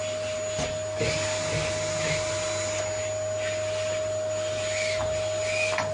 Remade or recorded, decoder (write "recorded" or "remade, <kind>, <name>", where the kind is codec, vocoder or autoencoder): recorded